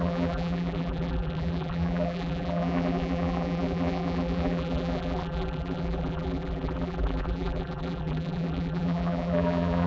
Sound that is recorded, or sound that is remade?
remade